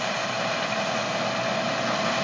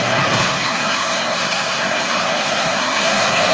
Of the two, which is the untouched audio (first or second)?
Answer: first